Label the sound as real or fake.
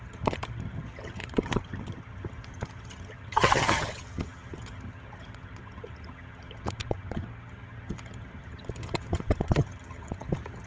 fake